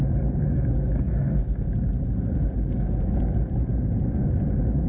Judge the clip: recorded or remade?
recorded